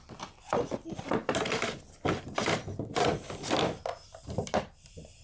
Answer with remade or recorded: remade